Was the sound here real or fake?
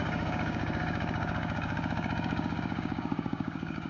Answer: fake